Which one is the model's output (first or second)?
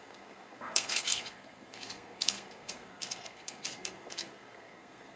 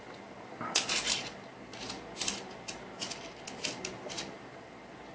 first